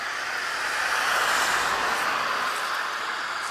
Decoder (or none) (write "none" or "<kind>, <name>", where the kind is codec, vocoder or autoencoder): none